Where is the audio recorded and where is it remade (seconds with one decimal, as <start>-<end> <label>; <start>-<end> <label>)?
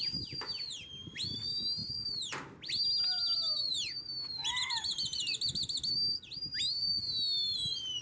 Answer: 0.0-8.0 recorded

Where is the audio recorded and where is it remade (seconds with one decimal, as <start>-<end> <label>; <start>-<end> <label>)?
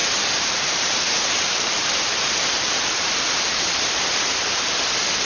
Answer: 0.0-3.2 remade; 3.2-5.3 recorded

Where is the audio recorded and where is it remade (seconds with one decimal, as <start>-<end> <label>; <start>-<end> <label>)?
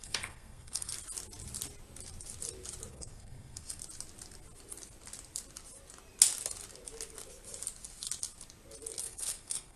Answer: 0.0-0.9 remade; 0.9-2.9 recorded; 2.9-3.8 remade; 3.8-9.0 recorded; 9.0-9.8 remade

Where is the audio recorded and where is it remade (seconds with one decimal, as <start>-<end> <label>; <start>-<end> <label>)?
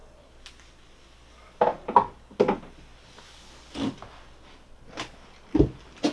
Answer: 0.0-6.1 recorded